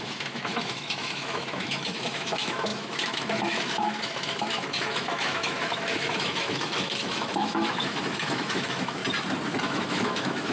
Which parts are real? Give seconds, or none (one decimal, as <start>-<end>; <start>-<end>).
9.0-9.6